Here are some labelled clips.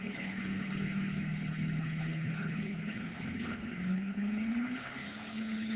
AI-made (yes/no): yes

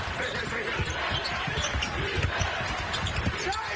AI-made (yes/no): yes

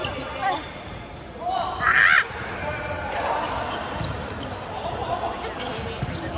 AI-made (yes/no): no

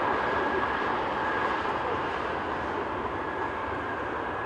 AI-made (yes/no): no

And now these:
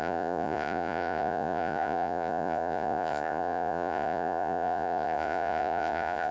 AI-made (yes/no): yes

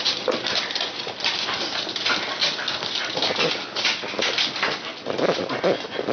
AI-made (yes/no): no